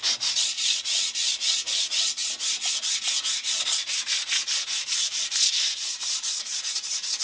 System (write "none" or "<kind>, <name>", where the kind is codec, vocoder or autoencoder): vocoder, Vocos